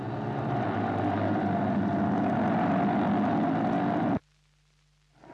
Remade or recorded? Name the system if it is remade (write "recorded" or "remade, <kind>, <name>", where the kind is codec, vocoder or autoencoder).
recorded